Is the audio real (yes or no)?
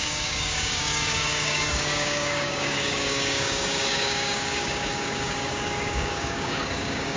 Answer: no